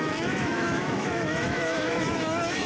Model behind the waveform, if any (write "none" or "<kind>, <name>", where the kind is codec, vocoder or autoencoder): autoencoder, DAC-VAE